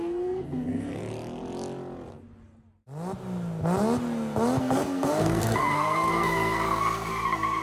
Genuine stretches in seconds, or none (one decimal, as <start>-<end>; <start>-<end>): 1.0-4.6